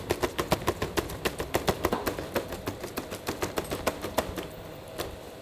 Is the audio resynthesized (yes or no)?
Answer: no